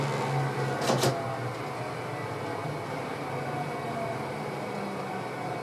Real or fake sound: real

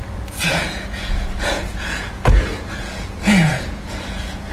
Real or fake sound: fake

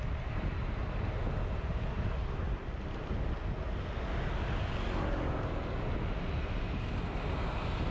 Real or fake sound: real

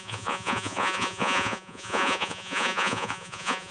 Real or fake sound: fake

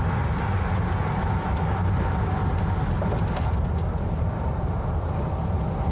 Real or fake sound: real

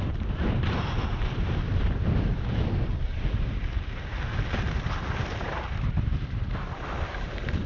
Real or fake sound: real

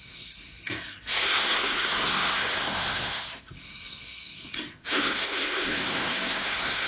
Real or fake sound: fake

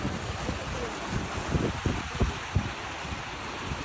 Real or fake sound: real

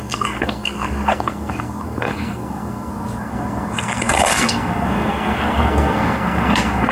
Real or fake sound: fake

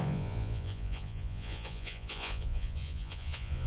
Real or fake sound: fake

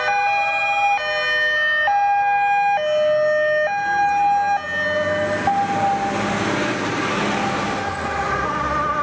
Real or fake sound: real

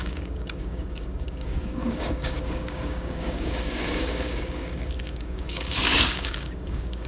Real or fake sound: fake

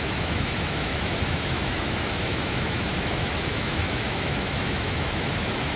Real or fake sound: fake